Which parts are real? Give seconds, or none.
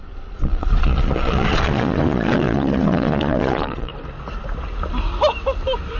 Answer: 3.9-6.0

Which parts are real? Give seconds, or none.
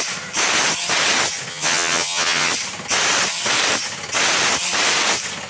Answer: 0.0-1.5; 2.5-5.5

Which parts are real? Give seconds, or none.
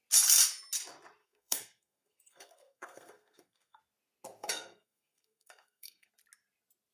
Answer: 0.0-1.2; 3.8-4.4; 6.1-6.9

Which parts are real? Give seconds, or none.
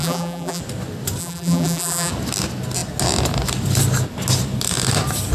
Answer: 0.6-1.2; 2.1-5.3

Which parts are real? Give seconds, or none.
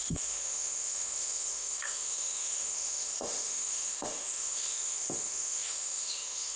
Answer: none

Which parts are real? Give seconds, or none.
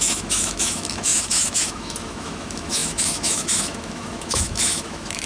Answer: none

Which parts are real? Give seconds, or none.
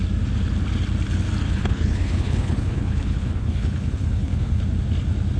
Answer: 0.0-1.4; 4.6-5.4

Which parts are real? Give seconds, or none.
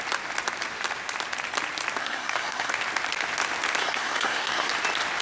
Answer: 0.0-2.0; 2.7-3.8; 4.7-5.2